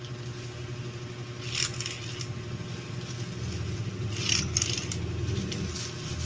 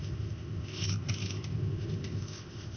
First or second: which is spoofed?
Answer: second